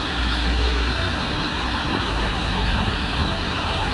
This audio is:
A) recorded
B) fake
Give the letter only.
B